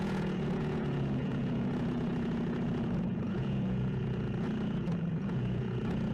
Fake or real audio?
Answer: fake